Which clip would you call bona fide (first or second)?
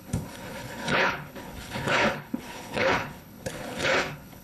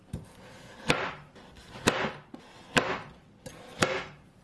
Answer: second